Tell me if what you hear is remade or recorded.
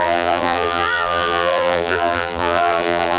remade